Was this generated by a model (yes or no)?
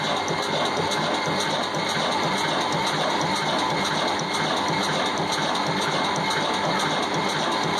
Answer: no